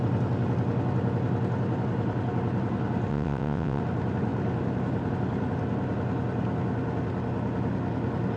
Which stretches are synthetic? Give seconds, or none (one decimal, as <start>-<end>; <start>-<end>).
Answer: 3.1-3.8